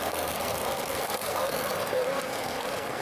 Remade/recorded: remade